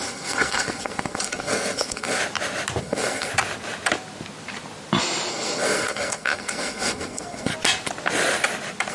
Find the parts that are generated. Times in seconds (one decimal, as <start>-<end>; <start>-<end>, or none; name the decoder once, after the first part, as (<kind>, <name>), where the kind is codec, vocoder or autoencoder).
0.0-2.2 (codec, SNAC); 2.8-3.3; 5.3-7.5